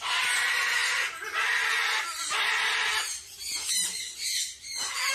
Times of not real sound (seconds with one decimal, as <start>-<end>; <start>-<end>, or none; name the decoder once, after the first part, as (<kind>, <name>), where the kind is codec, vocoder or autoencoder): none